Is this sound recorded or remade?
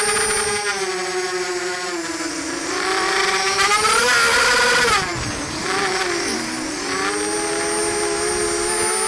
recorded